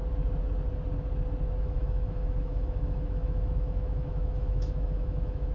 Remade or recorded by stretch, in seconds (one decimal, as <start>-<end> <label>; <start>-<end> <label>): 0.0-1.6 recorded; 1.6-5.5 remade